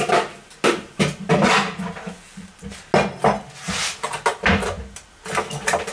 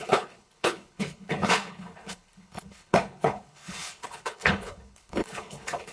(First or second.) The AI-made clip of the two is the second